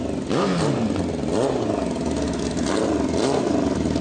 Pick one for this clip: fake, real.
real